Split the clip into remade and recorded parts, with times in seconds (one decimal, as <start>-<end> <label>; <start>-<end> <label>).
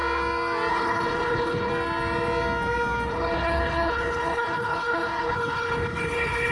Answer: 0.0-0.7 recorded; 0.7-1.7 remade; 1.7-3.1 recorded; 3.1-6.5 remade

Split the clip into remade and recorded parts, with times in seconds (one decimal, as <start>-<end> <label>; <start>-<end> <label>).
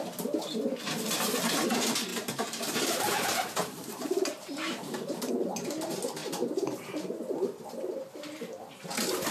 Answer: 0.0-2.1 recorded; 2.1-5.3 remade; 5.3-9.3 recorded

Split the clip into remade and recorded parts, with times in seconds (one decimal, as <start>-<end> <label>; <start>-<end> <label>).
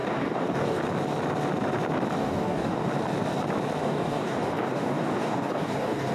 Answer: 0.0-0.8 remade; 0.8-2.2 recorded; 2.2-2.9 remade; 2.9-3.8 recorded; 3.8-6.1 remade